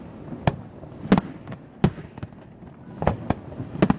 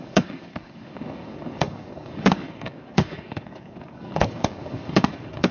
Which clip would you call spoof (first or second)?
second